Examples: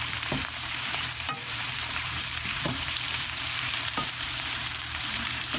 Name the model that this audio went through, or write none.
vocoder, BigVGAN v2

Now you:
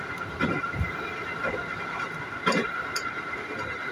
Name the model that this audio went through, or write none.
vocoder, BigVGAN v2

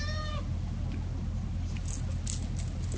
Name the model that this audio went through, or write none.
none